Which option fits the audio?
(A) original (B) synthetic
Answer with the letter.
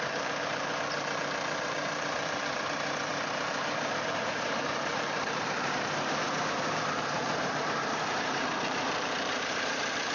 B